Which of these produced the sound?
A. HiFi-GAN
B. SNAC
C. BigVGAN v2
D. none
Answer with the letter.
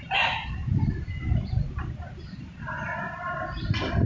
D